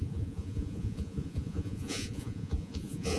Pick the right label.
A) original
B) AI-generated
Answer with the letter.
B